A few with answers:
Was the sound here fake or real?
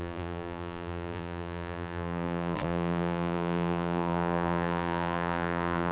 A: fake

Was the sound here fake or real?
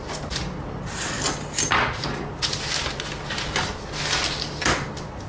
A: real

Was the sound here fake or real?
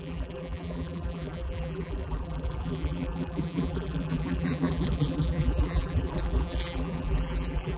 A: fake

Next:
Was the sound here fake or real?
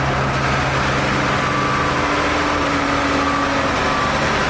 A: real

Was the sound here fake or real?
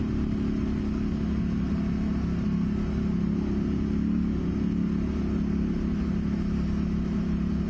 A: real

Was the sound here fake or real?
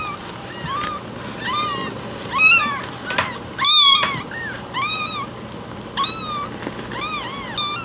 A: real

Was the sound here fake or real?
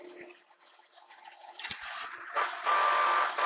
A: real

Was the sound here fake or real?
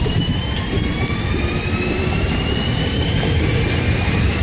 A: fake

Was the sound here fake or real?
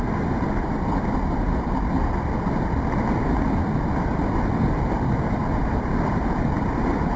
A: fake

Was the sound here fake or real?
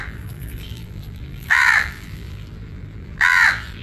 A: fake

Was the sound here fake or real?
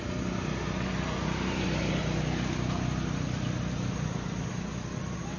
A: real